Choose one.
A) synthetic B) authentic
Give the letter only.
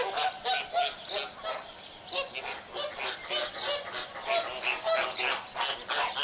B